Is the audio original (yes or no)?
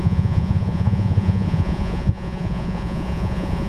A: no